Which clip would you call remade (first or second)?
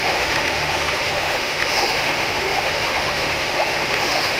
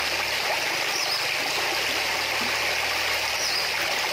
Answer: first